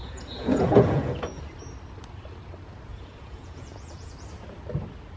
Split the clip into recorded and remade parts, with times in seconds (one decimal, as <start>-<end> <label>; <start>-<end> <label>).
0.0-1.4 remade; 1.4-2.9 recorded; 2.9-4.1 remade; 4.1-5.2 recorded

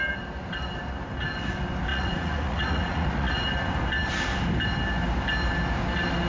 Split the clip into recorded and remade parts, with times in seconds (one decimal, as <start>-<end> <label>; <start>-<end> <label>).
0.0-1.9 recorded; 1.9-3.5 remade; 3.5-6.3 recorded